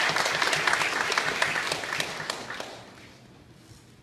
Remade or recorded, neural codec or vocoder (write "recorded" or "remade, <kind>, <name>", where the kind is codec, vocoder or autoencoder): recorded